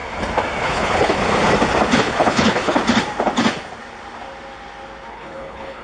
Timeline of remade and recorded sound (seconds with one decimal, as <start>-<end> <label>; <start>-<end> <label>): 0.0-0.6 recorded; 0.6-1.2 remade; 1.2-2.0 recorded; 2.0-2.8 remade; 2.8-5.1 recorded; 5.1-5.8 remade